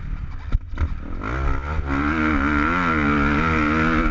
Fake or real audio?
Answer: real